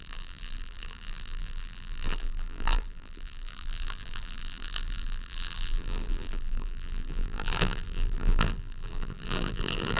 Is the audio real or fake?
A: fake